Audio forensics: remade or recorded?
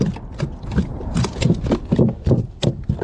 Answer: recorded